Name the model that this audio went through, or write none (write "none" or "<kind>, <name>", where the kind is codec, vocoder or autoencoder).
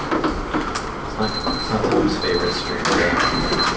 none